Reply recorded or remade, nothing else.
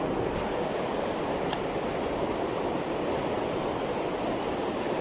recorded